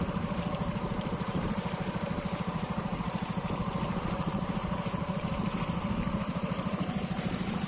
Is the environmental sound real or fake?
fake